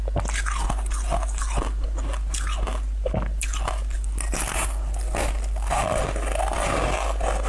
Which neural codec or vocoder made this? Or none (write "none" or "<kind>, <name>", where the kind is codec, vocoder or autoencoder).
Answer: none